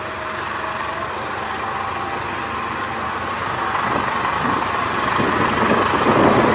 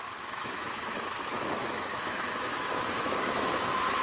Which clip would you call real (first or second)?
first